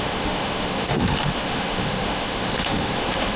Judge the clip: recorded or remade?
remade